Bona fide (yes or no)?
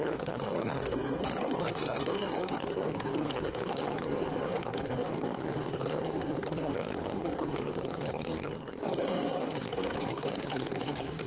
no